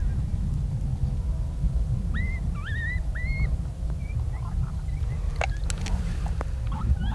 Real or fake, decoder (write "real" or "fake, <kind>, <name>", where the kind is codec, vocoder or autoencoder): real